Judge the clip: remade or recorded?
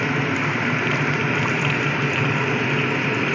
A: recorded